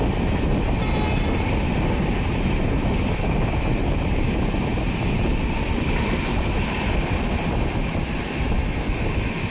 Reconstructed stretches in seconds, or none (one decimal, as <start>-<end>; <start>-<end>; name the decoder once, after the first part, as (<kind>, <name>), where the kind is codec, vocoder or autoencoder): 8.6-9.1 (codec, SNAC)